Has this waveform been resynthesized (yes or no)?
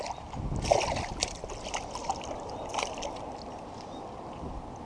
no